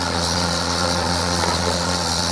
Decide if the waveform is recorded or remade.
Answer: remade